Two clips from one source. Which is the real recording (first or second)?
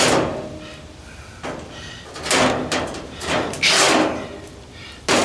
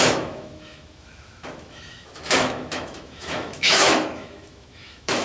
first